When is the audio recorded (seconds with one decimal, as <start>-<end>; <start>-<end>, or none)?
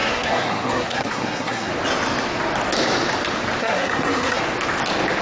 1.7-3.6; 4.4-5.2